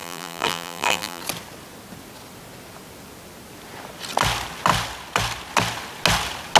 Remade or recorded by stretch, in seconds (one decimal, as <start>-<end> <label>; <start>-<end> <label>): 0.0-1.2 remade; 1.2-6.6 recorded

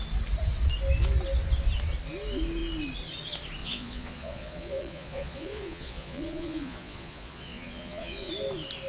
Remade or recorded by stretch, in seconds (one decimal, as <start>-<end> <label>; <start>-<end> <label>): 0.0-3.6 recorded; 3.6-8.3 remade; 8.3-8.9 recorded

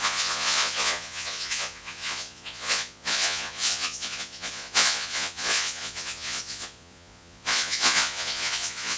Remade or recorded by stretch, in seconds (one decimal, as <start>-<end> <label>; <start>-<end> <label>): 0.0-9.0 remade

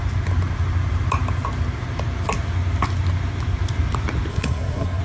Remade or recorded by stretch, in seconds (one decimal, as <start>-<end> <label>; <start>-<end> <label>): 0.0-4.3 recorded; 4.3-5.0 remade

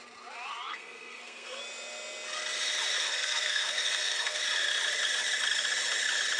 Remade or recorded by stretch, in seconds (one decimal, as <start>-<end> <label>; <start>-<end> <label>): 0.0-0.7 recorded; 0.7-1.6 remade; 1.6-3.0 recorded; 3.0-4.4 remade; 4.4-6.4 recorded

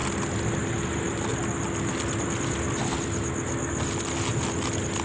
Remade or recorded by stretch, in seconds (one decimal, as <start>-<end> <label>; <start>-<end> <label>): 0.0-5.0 recorded

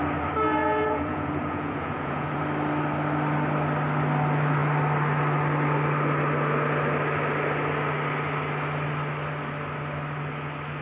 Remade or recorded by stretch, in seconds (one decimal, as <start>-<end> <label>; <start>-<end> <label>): 0.0-0.6 recorded; 0.6-2.4 remade; 2.4-10.8 recorded

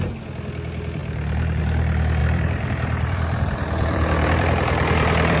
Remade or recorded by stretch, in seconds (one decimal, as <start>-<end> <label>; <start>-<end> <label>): 0.0-2.2 recorded; 2.2-5.4 remade